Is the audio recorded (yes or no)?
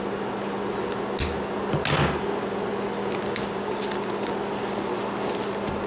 yes